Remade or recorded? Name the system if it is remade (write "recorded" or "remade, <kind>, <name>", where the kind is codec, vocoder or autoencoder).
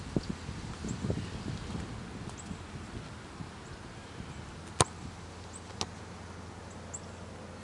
recorded